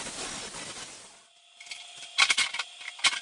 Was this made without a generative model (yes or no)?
yes